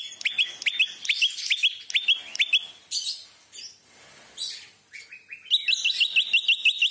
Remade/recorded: recorded